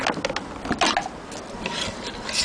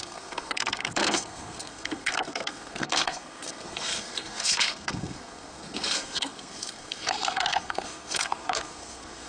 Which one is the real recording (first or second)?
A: first